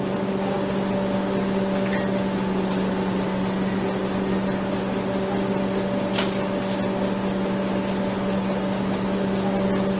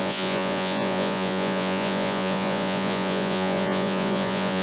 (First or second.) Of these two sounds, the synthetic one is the second